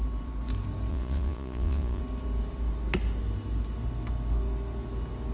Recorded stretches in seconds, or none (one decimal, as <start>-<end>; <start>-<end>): 0.0-0.9; 2.0-5.3